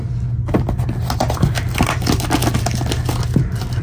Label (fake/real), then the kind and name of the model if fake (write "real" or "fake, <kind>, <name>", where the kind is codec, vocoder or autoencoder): real